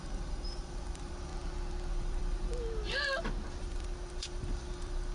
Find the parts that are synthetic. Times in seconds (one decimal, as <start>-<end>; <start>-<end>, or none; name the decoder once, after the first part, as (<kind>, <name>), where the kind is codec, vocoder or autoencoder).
0.0-1.3 (vocoder, BigVGAN v2); 1.9-2.5; 3.6-5.1